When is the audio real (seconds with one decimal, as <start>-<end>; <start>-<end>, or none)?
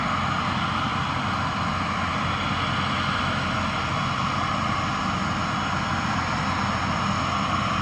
0.0-7.8